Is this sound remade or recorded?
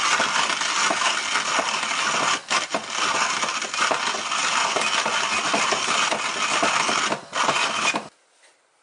recorded